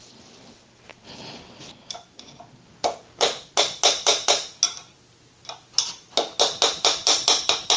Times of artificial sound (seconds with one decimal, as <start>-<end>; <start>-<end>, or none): none

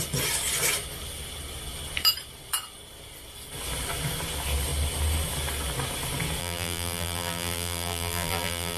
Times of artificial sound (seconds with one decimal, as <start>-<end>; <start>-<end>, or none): 6.4-8.8